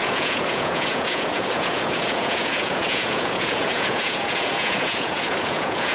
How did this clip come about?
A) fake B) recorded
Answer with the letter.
A